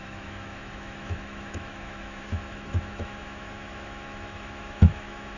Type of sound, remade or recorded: remade